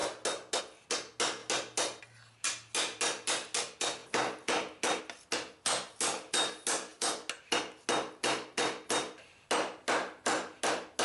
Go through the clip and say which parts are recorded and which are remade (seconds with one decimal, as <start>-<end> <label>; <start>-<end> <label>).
0.0-11.0 recorded